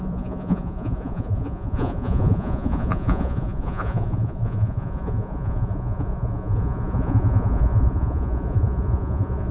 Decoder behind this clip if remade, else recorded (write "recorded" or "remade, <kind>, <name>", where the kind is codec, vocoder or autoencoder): remade, vocoder, Vocos